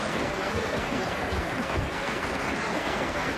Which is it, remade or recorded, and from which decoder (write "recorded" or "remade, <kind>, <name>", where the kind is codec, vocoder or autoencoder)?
remade, codec, SNAC